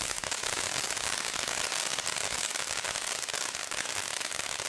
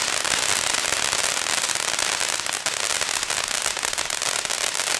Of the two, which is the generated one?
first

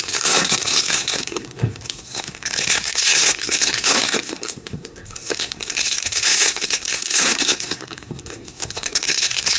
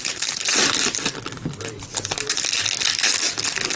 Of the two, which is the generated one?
first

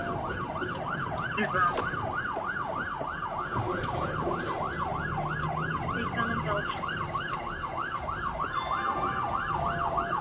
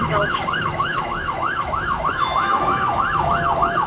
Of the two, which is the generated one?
second